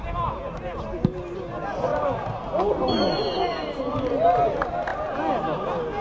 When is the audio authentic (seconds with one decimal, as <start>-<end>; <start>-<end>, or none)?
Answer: 0.0-6.0